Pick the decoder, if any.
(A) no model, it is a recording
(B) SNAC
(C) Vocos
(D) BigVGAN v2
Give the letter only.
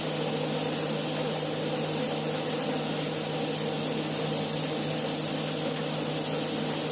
A